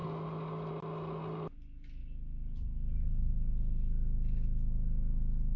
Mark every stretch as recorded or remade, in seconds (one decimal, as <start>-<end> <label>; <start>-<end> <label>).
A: 0.0-5.6 recorded